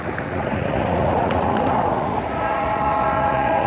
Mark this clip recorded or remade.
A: remade